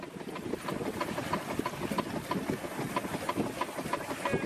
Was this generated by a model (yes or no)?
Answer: no